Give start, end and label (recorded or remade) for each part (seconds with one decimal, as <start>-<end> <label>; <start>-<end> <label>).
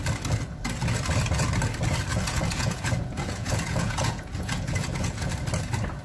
0.0-2.1 recorded; 2.1-5.3 remade; 5.3-6.0 recorded